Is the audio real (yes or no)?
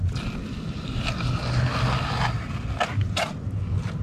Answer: yes